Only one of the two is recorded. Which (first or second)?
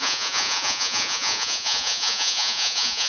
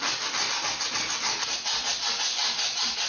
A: second